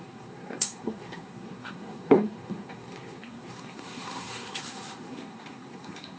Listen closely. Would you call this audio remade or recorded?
remade